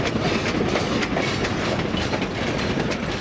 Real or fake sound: real